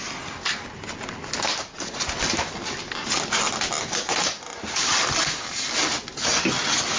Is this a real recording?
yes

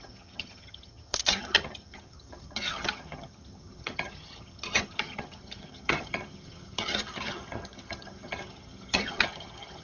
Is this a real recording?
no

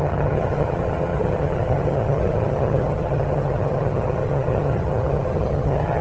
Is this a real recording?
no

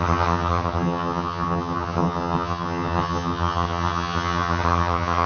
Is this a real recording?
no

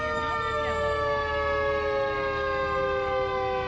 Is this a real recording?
yes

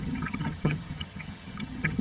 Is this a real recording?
no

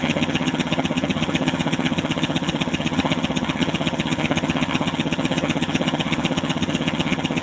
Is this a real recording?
no